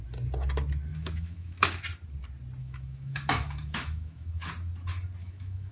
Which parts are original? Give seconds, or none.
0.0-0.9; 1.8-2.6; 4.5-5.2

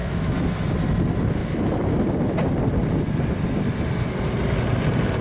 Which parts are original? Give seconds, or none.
0.7-5.2

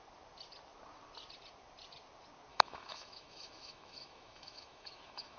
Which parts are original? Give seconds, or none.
0.0-2.5